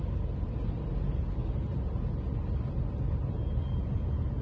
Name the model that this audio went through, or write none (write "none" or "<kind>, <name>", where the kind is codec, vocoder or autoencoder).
none